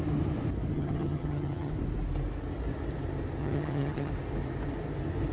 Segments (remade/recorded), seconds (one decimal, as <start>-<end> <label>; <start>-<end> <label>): 0.0-0.7 recorded; 0.7-1.7 remade; 1.7-3.4 recorded; 3.4-4.1 remade; 4.1-5.3 recorded